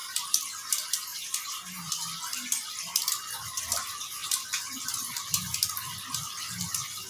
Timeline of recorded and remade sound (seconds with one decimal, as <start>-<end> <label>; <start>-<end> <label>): 0.0-1.1 recorded; 1.1-1.9 remade; 1.9-7.1 recorded